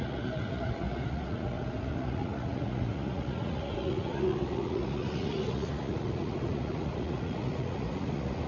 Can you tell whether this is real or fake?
fake